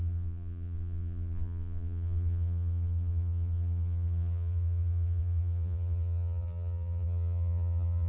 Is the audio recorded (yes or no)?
no